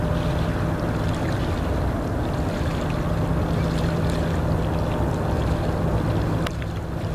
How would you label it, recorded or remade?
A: recorded